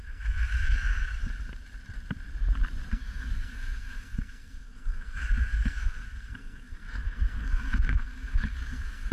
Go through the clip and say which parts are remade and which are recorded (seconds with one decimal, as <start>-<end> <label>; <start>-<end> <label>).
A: 0.0-1.2 remade; 1.2-2.9 recorded; 2.9-9.1 remade